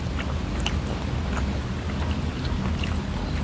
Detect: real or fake real